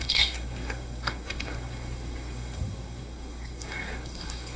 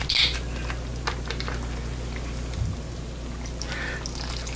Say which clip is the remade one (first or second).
first